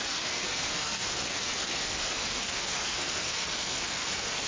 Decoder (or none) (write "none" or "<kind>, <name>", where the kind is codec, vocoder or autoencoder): codec, SNAC